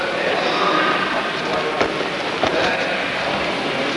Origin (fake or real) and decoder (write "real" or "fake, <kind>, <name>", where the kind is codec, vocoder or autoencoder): real